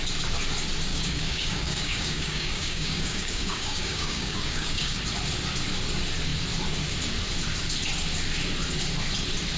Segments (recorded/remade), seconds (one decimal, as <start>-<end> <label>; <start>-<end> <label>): 0.0-0.9 recorded; 0.9-5.0 remade; 5.0-9.6 recorded